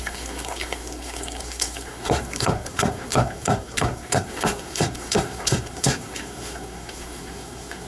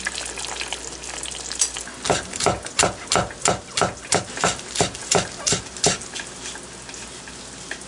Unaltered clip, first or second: second